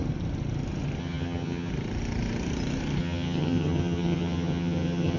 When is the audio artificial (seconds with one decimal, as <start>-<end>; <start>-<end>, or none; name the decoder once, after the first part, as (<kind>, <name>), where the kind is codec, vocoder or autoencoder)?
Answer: 1.0-1.7 (vocoder, HiFi-GAN); 3.0-5.2